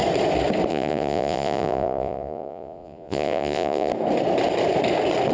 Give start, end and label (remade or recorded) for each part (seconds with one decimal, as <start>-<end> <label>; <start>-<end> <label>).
0.0-0.7 recorded; 0.7-3.9 remade; 3.9-5.3 recorded